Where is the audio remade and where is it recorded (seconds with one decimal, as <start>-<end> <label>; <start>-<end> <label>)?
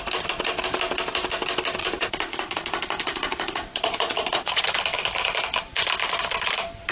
0.0-1.8 recorded; 1.8-4.6 remade; 4.6-6.9 recorded